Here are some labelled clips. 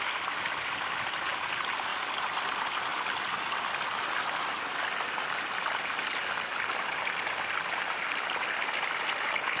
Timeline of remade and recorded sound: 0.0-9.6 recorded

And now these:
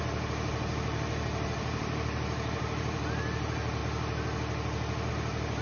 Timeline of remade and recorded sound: 0.0-3.8 remade; 3.8-5.1 recorded; 5.1-5.6 remade

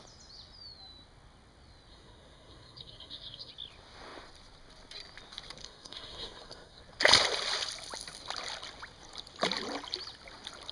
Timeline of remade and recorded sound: 0.0-1.9 recorded; 1.9-3.5 remade; 3.5-5.6 recorded; 5.6-6.8 remade; 6.8-10.7 recorded

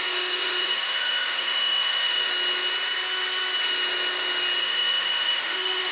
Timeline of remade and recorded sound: 0.0-2.3 remade; 2.3-4.6 recorded; 4.6-5.9 remade

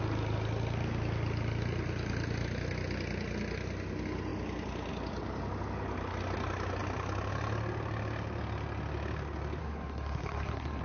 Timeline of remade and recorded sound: 0.0-9.6 recorded; 9.6-10.8 remade

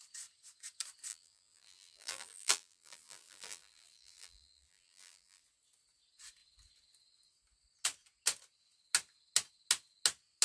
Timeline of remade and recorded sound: 0.0-1.1 recorded; 1.1-5.4 remade; 5.4-10.4 recorded

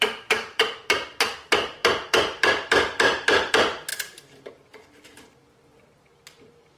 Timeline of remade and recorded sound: 0.0-6.8 remade

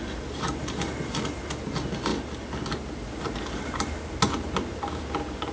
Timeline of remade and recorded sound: 0.0-5.5 recorded